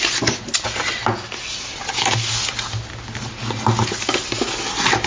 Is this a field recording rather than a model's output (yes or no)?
yes